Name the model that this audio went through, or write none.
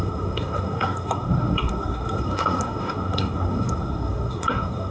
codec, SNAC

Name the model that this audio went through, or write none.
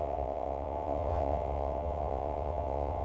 vocoder, WaveNeXt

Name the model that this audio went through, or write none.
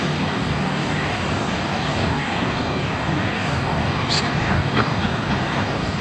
codec, DAC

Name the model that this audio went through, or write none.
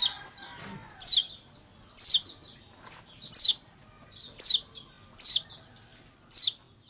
none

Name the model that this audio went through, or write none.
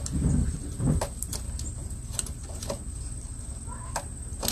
none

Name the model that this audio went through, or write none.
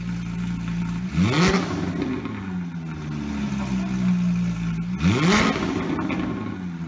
none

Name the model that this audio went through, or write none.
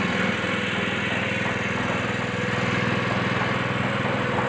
none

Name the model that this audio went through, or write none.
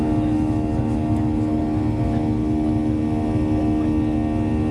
none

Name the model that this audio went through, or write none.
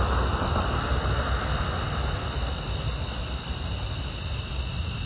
none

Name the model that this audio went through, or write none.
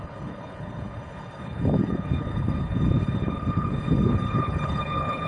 codec, HILCodec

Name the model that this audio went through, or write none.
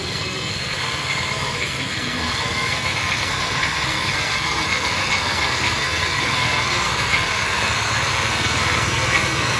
codec, SNAC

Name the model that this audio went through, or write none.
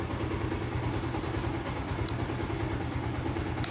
none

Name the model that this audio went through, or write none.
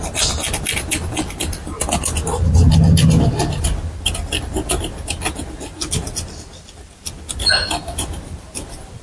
none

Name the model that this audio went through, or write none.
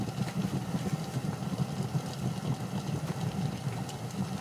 none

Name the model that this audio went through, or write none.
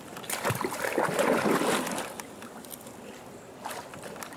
none